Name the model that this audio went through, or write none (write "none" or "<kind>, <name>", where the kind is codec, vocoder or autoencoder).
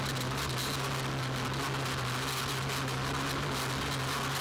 none